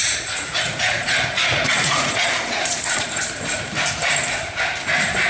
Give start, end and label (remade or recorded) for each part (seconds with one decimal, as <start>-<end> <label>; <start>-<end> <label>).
0.0-3.2 remade; 3.2-5.3 recorded

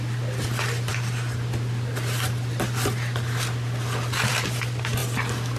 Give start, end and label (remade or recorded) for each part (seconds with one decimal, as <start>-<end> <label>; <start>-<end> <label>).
0.0-0.9 remade; 0.9-4.3 recorded; 4.3-5.0 remade; 5.0-5.6 recorded